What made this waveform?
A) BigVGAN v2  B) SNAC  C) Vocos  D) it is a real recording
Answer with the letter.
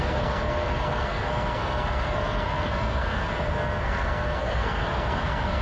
B